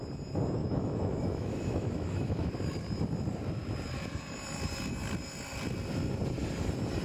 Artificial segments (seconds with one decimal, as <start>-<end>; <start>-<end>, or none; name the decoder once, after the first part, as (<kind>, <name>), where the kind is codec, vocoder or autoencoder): 0.6-2.5 (autoencoder, DAC-VAE)

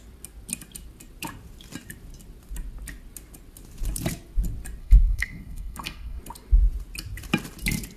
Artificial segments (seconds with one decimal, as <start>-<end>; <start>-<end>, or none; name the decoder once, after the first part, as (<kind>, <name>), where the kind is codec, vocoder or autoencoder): 4.8-6.2 (codec, SNAC)

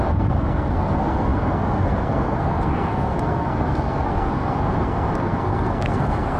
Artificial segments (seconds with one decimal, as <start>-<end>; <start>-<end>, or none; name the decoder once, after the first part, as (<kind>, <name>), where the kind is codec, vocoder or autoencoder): 0.0-6.4 (codec, SNAC)

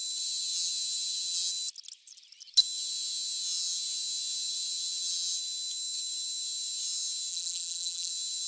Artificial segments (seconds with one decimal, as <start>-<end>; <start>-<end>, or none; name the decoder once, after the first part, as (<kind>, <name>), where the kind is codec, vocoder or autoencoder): 7.3-8.1 (vocoder, BigVGAN v2)